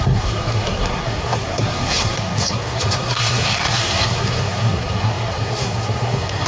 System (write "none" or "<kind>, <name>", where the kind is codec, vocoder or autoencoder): codec, SNAC